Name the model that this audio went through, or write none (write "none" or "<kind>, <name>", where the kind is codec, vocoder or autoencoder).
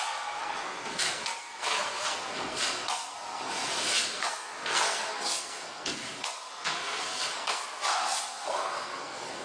codec, SNAC